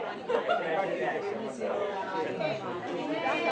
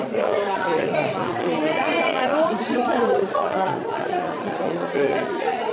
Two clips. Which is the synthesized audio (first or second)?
second